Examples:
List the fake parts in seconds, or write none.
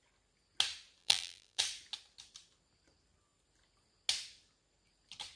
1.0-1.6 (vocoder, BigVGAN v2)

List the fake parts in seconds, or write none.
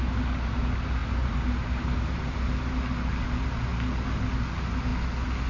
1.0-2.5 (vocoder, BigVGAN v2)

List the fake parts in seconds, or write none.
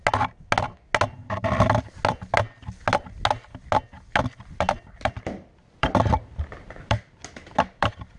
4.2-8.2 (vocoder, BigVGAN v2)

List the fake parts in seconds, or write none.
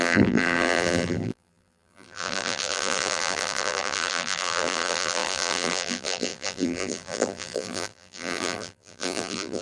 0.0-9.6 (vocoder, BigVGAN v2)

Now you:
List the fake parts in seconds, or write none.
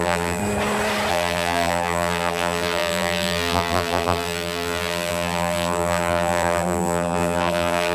0.0-0.4 (vocoder, BigVGAN v2); 1.1-7.9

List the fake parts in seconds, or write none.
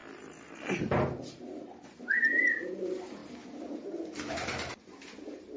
0.5-3.2 (vocoder, BigVGAN v2); 4.7-5.6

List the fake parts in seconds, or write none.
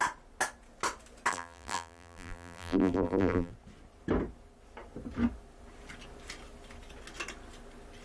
1.3-3.5 (vocoder, BigVGAN v2)